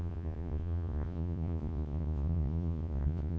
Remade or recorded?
remade